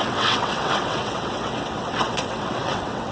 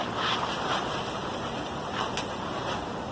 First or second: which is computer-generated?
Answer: first